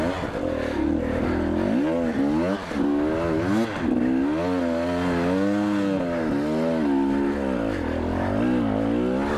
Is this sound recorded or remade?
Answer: recorded